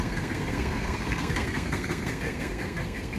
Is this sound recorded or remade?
remade